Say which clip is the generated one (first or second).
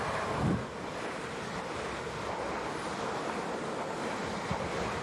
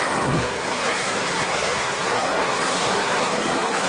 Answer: second